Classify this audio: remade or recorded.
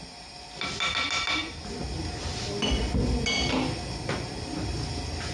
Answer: recorded